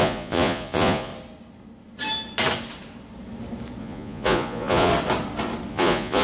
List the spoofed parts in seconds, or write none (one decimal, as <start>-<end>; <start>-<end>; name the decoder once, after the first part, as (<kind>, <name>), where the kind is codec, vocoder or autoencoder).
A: 0.0-1.1 (vocoder, Vocos); 3.8-4.9; 5.7-6.2